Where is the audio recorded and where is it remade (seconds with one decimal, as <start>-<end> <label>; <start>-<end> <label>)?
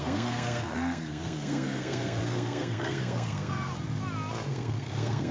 0.0-3.7 remade; 3.7-4.5 recorded; 4.5-5.3 remade